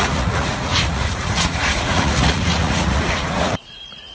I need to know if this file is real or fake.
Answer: fake